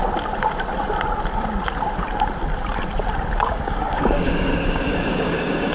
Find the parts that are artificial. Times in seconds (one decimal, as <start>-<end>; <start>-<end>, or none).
3.4-5.7

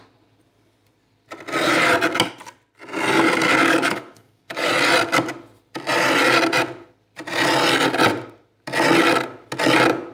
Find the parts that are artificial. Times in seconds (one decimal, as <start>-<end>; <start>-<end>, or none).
3.5-4.7

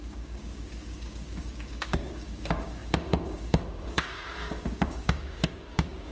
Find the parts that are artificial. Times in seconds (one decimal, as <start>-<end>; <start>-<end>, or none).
0.0-6.1

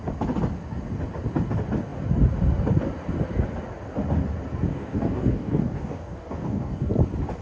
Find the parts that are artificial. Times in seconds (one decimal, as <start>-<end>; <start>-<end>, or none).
4.7-6.9

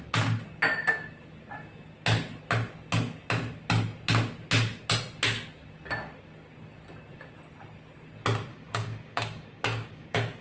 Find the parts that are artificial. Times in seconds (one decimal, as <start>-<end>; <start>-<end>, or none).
8.5-10.4

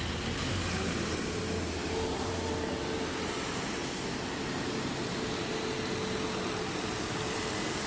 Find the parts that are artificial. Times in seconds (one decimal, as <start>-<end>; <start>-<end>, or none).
none